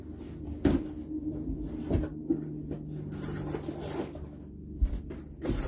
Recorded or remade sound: recorded